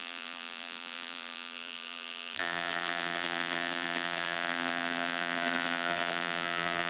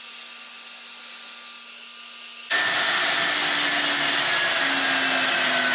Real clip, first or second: second